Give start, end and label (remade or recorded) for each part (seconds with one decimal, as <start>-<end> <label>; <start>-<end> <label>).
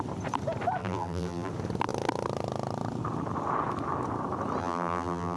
0.0-0.8 recorded; 0.8-1.5 remade; 1.5-4.6 recorded; 4.6-5.4 remade